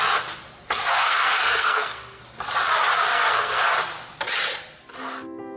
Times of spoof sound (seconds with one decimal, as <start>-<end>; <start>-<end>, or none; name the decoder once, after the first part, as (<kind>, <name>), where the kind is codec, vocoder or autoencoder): 0.9-2.2 (codec, SNAC); 3.1-3.7